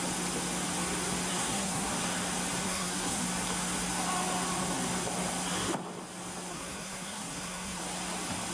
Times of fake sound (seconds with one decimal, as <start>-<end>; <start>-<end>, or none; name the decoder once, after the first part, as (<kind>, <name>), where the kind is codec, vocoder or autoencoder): 1.3-1.9 (codec, SNAC); 2.6-3.2; 6.5-7.8